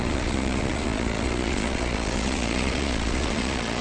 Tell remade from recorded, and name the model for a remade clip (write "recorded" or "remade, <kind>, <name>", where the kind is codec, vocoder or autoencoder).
remade, vocoder, Vocos